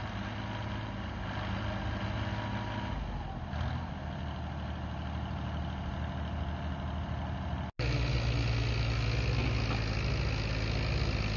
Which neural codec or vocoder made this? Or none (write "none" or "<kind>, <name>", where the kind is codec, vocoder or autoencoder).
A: none